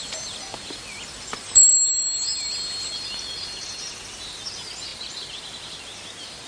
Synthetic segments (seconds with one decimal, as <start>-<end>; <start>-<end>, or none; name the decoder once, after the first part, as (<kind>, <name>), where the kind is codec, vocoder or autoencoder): 0.8-1.7 (vocoder, BigVGAN v2)